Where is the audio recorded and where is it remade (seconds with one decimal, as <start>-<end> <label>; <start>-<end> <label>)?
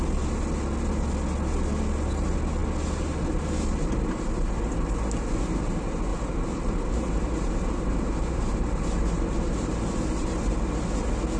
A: 0.0-6.1 recorded; 6.1-10.5 remade; 10.5-11.4 recorded